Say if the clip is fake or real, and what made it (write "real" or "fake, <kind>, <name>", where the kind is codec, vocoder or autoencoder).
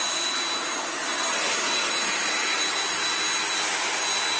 real